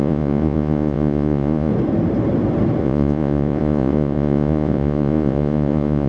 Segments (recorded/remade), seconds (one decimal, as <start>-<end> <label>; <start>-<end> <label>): 0.0-1.7 remade; 1.7-2.8 recorded; 2.8-6.1 remade